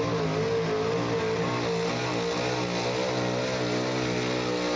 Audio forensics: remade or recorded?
recorded